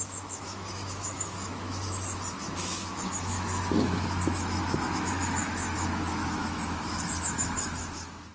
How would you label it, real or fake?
fake